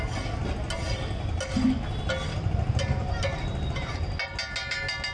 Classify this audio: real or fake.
real